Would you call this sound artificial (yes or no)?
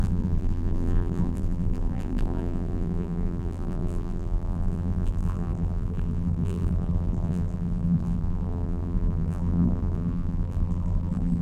yes